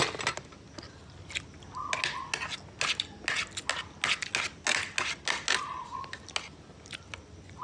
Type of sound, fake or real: real